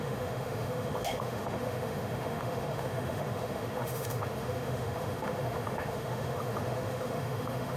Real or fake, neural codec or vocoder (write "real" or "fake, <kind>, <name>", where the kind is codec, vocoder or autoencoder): fake, autoencoder, DAC-VAE